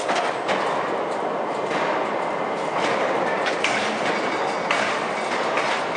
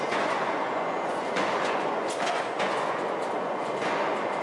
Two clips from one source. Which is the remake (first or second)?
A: second